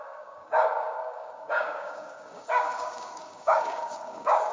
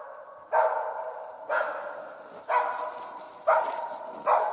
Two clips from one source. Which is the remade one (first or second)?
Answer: first